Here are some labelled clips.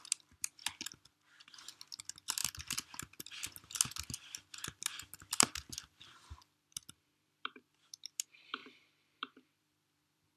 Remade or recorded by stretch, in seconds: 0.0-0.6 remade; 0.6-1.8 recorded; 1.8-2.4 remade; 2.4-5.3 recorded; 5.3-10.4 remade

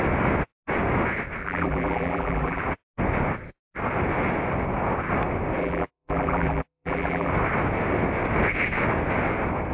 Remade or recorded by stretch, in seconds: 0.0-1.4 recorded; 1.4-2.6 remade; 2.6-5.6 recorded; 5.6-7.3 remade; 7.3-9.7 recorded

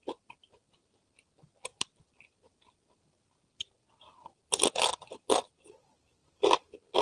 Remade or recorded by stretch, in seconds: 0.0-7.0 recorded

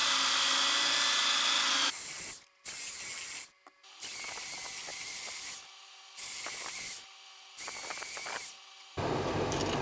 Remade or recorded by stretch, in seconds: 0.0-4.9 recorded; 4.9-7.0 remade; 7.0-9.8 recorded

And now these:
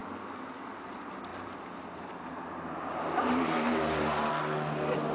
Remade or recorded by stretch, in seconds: 0.0-1.3 recorded; 1.3-4.3 remade; 4.3-5.1 recorded

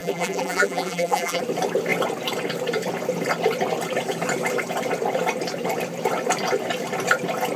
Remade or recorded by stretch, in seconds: 0.0-1.4 remade; 1.4-7.6 recorded